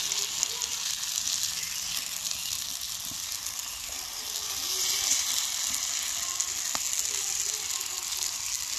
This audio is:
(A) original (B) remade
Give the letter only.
A